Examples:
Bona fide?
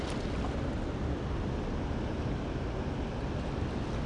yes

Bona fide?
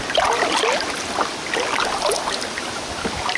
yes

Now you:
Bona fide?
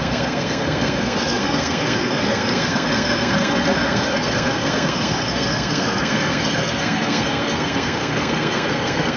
no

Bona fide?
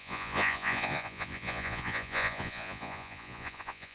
no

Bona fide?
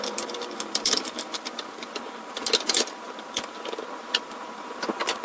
no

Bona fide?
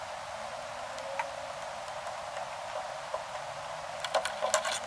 yes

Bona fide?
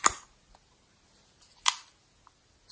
yes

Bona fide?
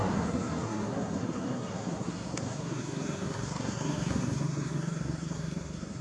no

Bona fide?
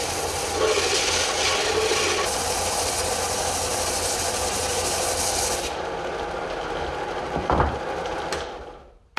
yes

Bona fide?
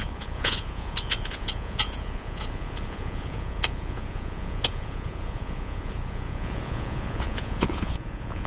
no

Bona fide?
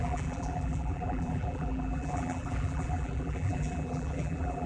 no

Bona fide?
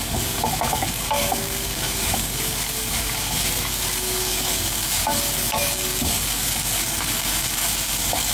no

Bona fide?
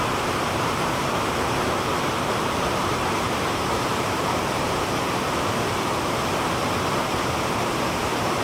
no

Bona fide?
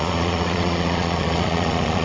no